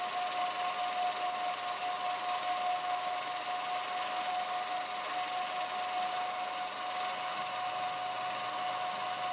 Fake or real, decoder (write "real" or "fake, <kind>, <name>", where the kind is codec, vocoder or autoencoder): real